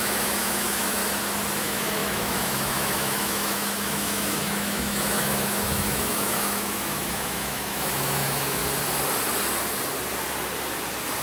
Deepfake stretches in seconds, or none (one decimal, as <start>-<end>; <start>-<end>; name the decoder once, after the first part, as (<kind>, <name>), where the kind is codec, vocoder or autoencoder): 0.0-1.0 (autoencoder, DAC-VAE); 1.6-8.6